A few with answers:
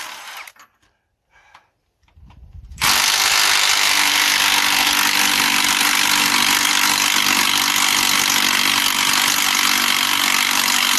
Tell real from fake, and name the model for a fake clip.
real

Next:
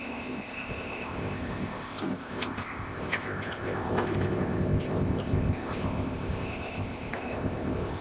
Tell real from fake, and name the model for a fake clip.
fake, codec, ZipCodec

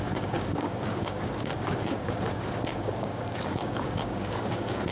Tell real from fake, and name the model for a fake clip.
fake, codec, DAC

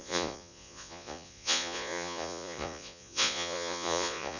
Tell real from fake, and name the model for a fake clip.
fake, vocoder, Vocos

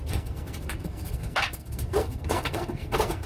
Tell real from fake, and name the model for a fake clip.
fake, codec, SNAC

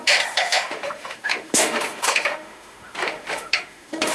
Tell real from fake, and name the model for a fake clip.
fake, autoencoder, DAC-VAE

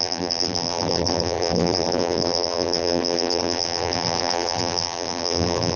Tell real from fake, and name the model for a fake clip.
fake, vocoder, BigVGAN v2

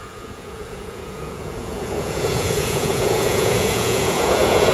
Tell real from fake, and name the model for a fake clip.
fake, vocoder, Vocos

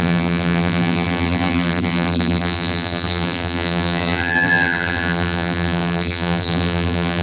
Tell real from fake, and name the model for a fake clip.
fake, vocoder, BigVGAN v2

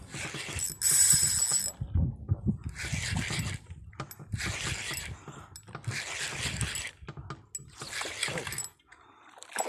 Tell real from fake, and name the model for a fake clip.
real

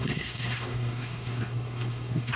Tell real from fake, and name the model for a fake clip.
fake, codec, SNAC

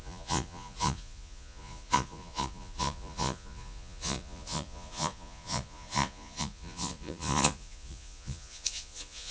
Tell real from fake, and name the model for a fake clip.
fake, vocoder, Vocos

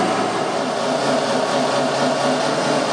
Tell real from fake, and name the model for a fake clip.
real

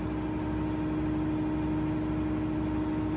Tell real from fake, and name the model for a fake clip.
real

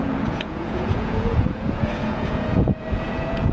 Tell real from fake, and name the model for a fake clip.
fake, vocoder, Vocos